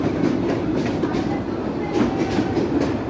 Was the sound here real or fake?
real